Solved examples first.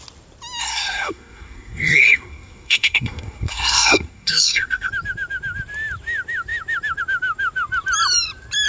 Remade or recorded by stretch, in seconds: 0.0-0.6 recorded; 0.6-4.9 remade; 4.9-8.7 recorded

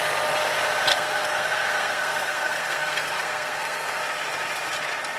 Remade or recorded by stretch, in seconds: 0.0-0.9 recorded; 0.9-4.0 remade; 4.0-5.2 recorded

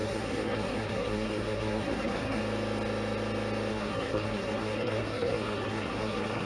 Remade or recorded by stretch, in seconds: 0.0-2.4 remade; 2.4-3.7 recorded; 3.7-6.5 remade